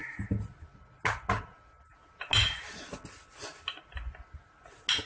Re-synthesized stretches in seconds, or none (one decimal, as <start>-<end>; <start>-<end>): none